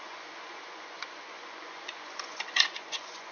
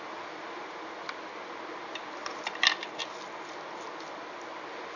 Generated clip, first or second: first